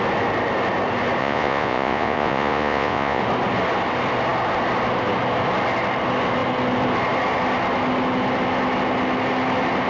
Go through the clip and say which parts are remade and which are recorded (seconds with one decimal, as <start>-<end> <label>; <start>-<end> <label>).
0.0-1.2 recorded; 1.2-3.2 remade; 3.2-9.9 recorded